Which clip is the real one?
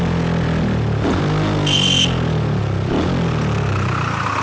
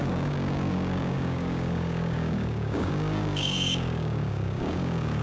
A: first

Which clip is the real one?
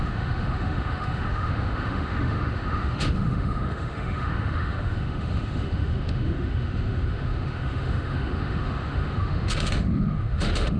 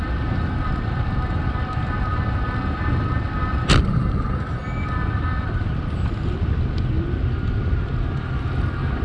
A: second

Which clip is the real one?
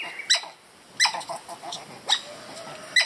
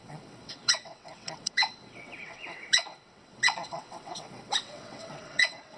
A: first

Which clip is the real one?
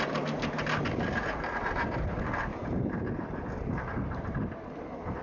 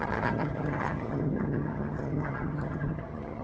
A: first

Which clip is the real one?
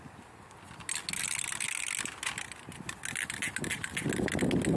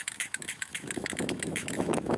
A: first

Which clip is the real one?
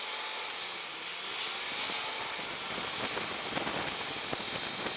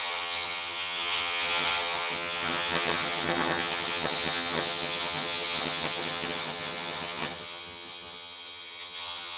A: first